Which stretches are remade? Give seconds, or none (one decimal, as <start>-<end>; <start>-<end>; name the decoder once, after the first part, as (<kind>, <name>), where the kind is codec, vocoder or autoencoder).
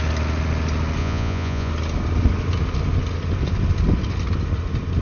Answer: 1.0-1.7 (vocoder, Vocos)